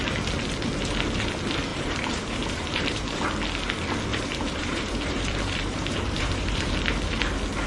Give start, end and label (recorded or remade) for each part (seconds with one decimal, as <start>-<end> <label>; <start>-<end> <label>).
0.0-1.7 recorded; 1.7-3.2 remade; 3.2-4.1 recorded; 4.1-6.7 remade; 6.7-7.7 recorded